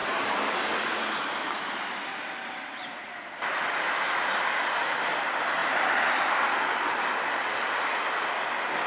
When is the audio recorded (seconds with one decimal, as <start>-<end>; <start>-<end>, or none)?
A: 0.0-8.9